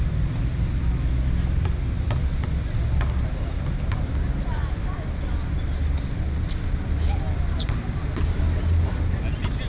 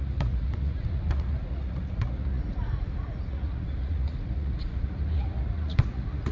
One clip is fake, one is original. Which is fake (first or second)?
second